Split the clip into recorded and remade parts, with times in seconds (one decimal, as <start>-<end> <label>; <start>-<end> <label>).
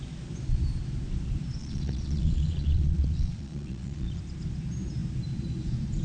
0.0-1.6 recorded; 1.6-4.2 remade; 4.2-6.0 recorded